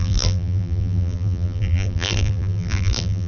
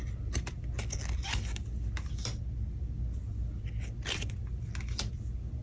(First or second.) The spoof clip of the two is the first